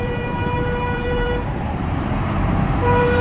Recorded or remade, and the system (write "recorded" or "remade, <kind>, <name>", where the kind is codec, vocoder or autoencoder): remade, vocoder, BigVGAN v2